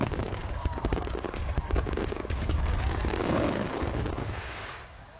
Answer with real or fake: fake